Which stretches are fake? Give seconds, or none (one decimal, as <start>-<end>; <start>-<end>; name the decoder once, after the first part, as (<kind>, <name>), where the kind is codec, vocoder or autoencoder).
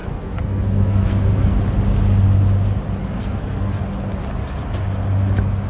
0.0-1.6 (codec, SNAC); 3.0-3.8